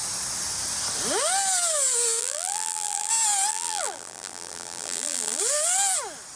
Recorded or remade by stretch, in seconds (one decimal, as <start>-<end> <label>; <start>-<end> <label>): 0.0-2.2 recorded; 2.2-3.1 remade; 3.1-3.5 recorded; 3.5-5.4 remade; 5.4-6.4 recorded